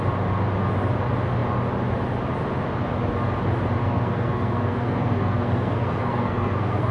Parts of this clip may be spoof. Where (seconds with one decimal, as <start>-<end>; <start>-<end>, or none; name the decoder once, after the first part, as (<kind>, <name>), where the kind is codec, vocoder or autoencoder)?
3.8-6.9 (codec, SNAC)